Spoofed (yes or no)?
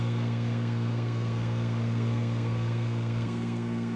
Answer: yes